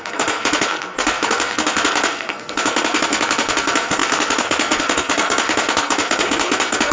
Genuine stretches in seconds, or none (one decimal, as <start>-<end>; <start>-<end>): none